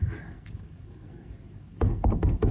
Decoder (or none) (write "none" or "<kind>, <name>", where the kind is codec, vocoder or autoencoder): codec, SNAC